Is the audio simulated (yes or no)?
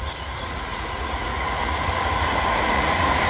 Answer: yes